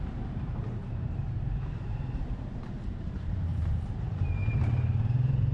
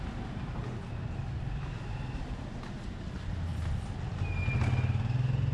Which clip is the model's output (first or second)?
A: first